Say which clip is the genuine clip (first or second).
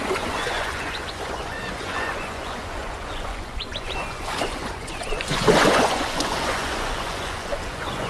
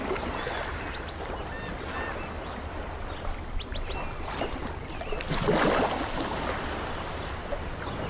second